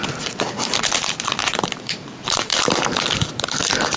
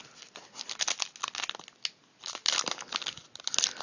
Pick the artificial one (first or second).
first